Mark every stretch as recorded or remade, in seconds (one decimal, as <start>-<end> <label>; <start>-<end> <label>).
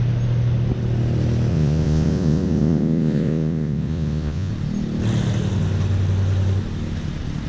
0.0-1.5 recorded; 1.5-4.5 remade; 4.5-7.5 recorded